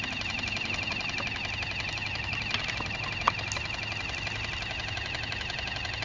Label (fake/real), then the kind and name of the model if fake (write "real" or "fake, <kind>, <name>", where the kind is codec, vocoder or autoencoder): real